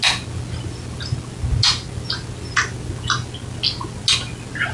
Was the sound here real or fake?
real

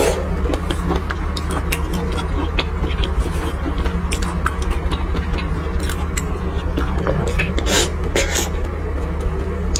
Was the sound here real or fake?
real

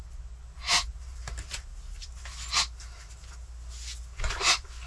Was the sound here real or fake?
real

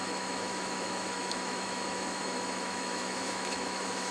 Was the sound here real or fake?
fake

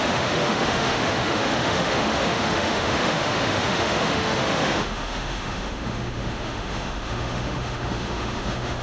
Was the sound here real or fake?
fake